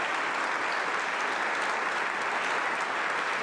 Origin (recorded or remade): recorded